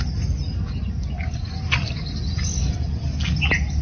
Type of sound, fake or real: real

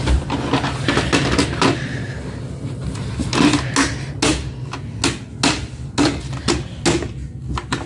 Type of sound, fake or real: real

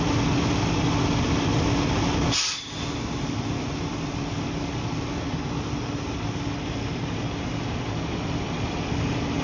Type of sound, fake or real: real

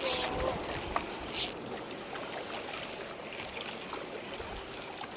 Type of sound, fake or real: real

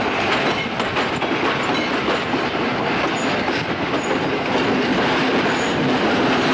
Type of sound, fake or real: real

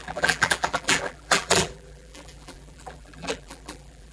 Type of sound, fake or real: fake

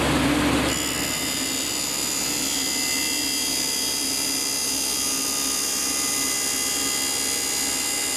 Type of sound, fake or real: real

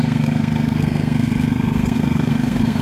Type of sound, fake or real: fake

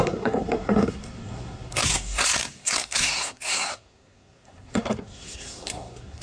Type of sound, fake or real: fake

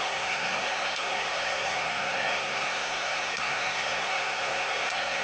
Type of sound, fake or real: fake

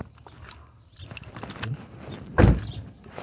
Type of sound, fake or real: real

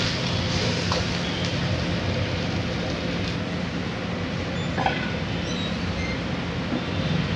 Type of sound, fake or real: real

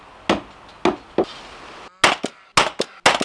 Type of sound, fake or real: real